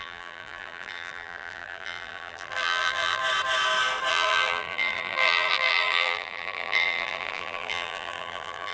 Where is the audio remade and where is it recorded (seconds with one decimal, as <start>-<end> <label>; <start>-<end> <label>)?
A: 0.0-3.2 remade; 3.2-4.1 recorded; 4.1-8.7 remade